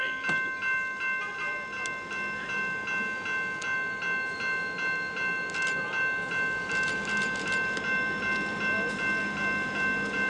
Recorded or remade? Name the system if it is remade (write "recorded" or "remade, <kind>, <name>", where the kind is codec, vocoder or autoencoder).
recorded